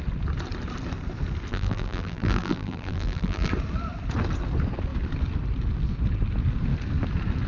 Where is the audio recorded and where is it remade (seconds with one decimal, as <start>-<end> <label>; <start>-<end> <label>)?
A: 0.0-1.5 recorded; 1.5-3.5 remade; 3.5-7.5 recorded